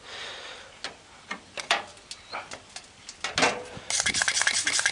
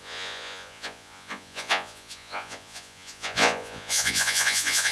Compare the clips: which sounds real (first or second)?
first